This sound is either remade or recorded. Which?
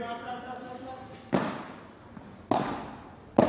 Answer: recorded